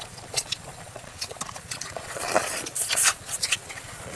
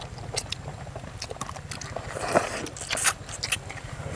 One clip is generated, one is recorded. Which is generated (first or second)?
first